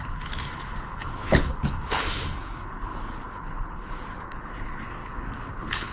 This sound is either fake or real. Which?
fake